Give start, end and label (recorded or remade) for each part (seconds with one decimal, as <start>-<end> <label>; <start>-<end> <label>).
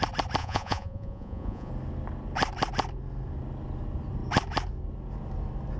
0.0-0.4 recorded; 0.4-1.7 remade; 1.7-5.8 recorded